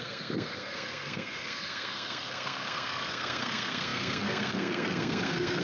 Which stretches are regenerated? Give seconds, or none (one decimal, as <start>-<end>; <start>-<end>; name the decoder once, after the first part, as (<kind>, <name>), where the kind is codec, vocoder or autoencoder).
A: 0.0-5.6 (codec, SNAC)